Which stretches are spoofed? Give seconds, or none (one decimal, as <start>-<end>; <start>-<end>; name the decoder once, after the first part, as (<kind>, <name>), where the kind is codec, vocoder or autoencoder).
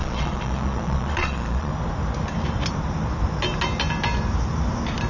0.0-1.7 (vocoder, Vocos)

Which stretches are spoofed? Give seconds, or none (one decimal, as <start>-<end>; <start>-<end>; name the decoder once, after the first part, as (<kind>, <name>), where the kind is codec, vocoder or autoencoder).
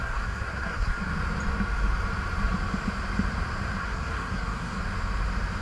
0.0-1.1 (codec, SNAC); 3.8-4.8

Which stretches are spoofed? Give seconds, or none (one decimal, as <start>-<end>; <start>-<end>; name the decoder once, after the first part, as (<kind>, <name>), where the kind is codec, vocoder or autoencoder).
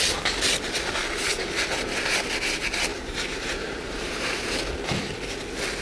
2.9-4.6 (vocoder, BigVGAN v2)